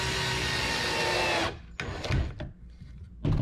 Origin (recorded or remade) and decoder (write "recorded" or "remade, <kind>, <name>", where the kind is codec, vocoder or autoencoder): recorded